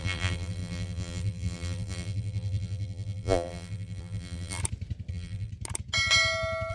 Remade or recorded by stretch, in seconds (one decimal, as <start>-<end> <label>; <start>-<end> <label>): 0.0-4.6 remade; 4.6-5.1 recorded; 5.1-5.5 remade; 5.5-6.7 recorded